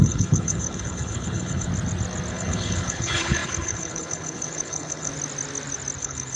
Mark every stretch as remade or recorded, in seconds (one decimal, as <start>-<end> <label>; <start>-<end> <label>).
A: 0.0-1.7 remade; 1.7-2.3 recorded; 2.3-5.1 remade; 5.1-6.0 recorded; 6.0-6.4 remade